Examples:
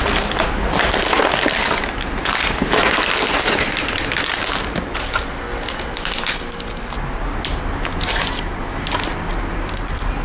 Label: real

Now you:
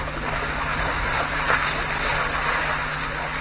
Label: real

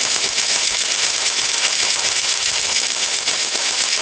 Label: fake